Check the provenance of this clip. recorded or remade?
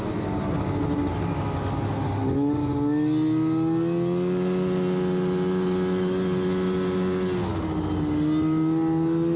recorded